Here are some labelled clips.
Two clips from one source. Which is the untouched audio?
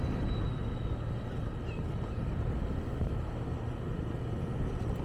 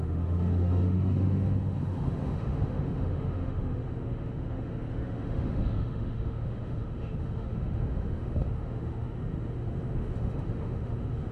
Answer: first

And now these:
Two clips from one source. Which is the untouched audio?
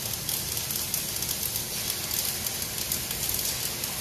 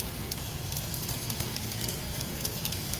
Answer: first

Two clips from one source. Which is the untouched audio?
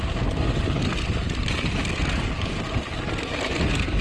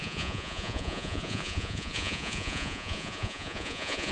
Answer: first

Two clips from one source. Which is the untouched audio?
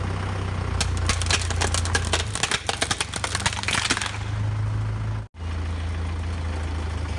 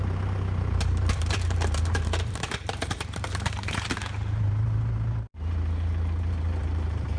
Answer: first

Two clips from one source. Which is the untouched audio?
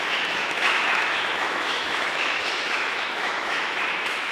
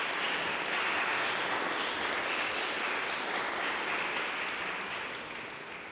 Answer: second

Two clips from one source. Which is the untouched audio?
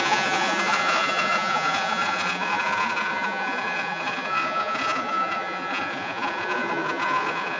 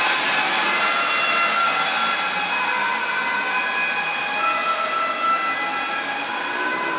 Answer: second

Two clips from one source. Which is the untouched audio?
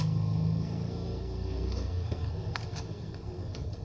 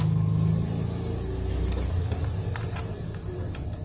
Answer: second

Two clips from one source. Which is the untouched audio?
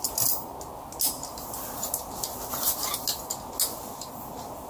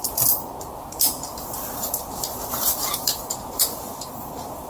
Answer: first